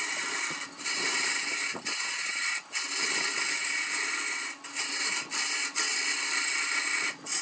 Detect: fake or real real